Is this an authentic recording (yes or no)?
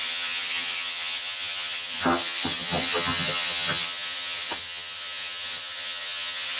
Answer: no